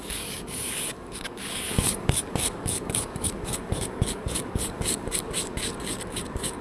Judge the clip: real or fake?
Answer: fake